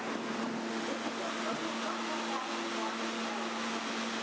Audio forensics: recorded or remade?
recorded